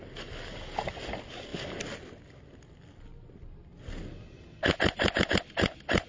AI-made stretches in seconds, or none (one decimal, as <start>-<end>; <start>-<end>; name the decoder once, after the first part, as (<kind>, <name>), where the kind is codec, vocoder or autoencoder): none